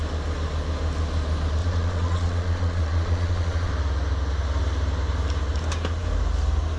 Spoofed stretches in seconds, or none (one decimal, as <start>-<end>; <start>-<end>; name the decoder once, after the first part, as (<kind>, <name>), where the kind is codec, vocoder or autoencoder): 1.6-3.7 (vocoder, Vocos)